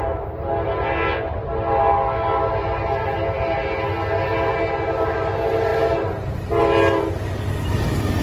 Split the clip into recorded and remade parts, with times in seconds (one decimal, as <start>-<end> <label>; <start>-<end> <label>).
0.0-8.2 recorded